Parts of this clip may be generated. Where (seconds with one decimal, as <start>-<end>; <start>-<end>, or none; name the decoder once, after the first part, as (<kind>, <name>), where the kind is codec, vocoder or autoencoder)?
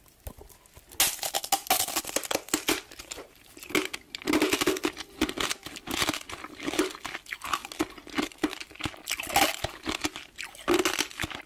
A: none